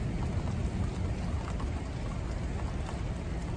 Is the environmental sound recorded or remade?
recorded